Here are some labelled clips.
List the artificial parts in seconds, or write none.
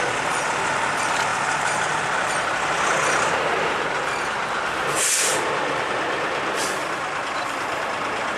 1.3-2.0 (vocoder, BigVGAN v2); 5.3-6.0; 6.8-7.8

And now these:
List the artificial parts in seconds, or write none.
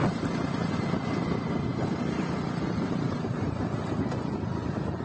1.7-5.0 (vocoder, BigVGAN v2)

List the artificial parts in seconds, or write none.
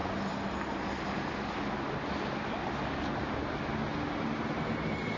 none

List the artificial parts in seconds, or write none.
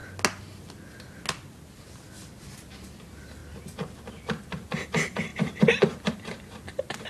3.0-3.4 (vocoder, BigVGAN v2); 4.1-7.1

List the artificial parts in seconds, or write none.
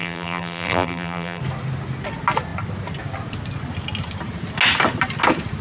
0.0-1.4 (vocoder, BigVGAN v2)